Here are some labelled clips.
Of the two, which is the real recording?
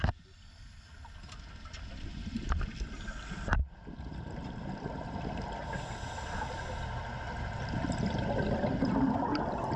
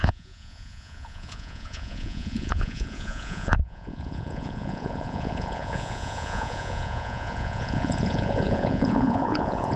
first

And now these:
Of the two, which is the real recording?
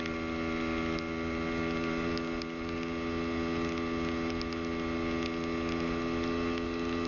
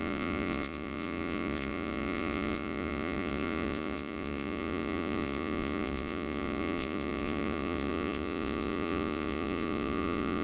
first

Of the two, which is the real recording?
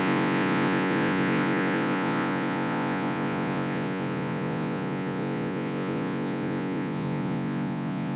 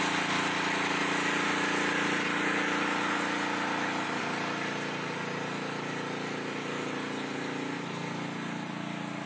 second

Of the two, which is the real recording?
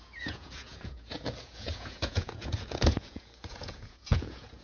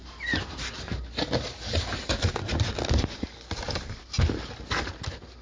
second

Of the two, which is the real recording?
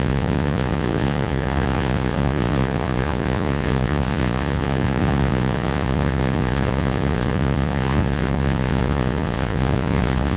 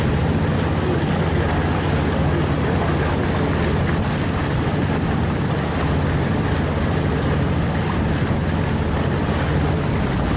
second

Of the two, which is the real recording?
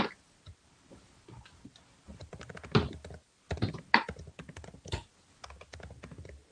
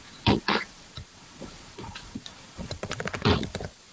first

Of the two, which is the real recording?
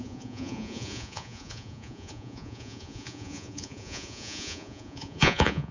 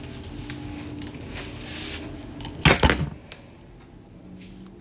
second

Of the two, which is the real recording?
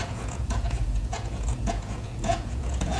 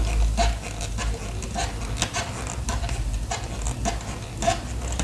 second